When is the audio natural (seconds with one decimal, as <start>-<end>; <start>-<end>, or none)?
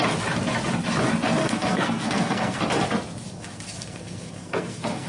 0.0-1.4; 2.6-3.3